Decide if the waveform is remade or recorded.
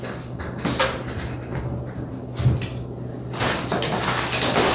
recorded